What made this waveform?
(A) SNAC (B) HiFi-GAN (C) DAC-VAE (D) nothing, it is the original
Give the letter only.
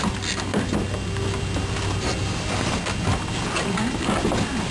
D